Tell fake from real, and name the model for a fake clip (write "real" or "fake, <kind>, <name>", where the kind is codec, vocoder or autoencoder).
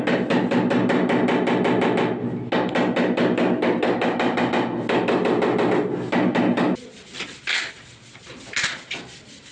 real